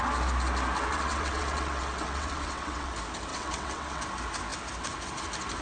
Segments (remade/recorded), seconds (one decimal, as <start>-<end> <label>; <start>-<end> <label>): 0.0-0.9 recorded; 0.9-2.9 remade; 2.9-3.3 recorded; 3.3-4.0 remade; 4.0-5.6 recorded